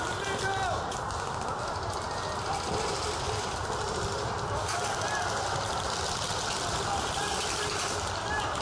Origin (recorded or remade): recorded